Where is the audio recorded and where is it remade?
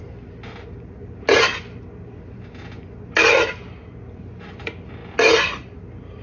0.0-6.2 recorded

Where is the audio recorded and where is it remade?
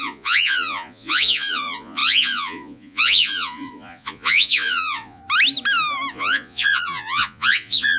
0.0-5.2 remade; 5.2-6.1 recorded; 6.1-8.0 remade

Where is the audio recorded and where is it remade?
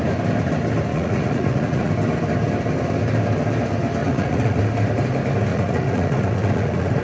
0.0-0.9 recorded; 0.9-1.9 remade; 1.9-4.0 recorded; 4.0-4.6 remade; 4.6-5.5 recorded; 5.5-7.0 remade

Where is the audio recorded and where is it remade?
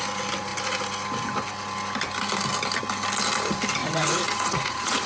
0.0-3.8 recorded; 3.8-5.1 remade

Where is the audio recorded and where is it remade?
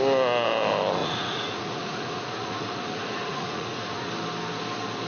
0.0-1.0 recorded; 1.0-4.1 remade; 4.1-5.1 recorded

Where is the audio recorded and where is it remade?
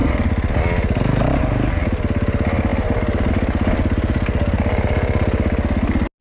0.0-6.2 recorded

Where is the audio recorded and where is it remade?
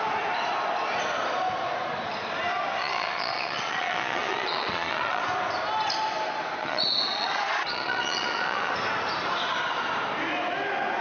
0.0-2.8 recorded; 2.8-5.2 remade; 5.2-6.6 recorded; 6.6-8.7 remade; 8.7-11.0 recorded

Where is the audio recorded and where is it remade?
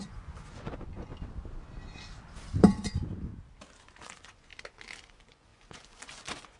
0.0-1.1 remade; 1.1-2.6 recorded; 2.6-3.3 remade; 3.3-3.8 recorded; 3.8-4.5 remade; 4.5-5.0 recorded; 5.0-6.6 remade